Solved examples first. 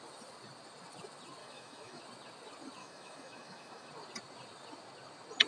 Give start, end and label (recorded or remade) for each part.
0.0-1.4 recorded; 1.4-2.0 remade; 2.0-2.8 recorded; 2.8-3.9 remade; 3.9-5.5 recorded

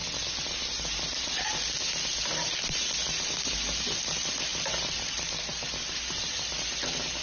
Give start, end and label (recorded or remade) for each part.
0.0-4.5 recorded; 4.5-6.6 remade; 6.6-7.2 recorded

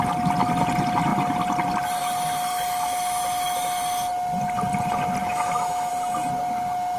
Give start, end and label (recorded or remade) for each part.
0.0-2.5 recorded; 2.5-3.8 remade; 3.8-5.2 recorded; 5.2-5.9 remade; 5.9-7.0 recorded

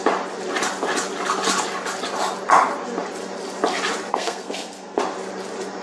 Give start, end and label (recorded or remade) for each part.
0.0-4.1 recorded; 4.1-5.0 remade; 5.0-5.8 recorded

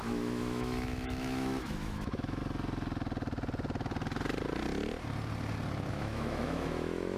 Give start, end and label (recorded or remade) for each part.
0.0-2.4 remade; 2.4-5.9 recorded; 5.9-7.2 remade

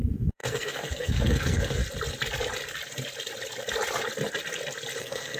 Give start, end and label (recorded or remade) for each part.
0.0-1.8 remade; 1.8-5.0 recorded; 5.0-5.4 remade